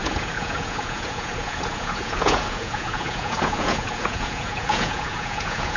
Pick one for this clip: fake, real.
fake